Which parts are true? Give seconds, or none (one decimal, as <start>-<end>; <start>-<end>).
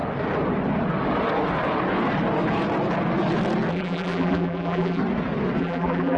0.0-3.7; 5.0-5.6